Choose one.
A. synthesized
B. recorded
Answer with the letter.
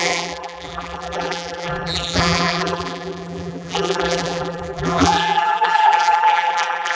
A